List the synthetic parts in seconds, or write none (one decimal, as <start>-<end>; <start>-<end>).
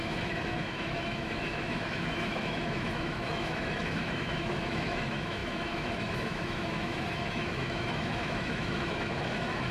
0.0-9.7